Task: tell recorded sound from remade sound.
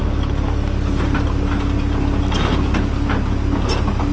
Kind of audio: recorded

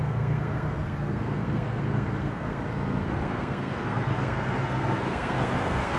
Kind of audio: remade